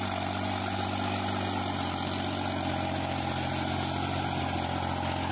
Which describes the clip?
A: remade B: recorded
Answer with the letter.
B